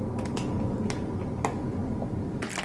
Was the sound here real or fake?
real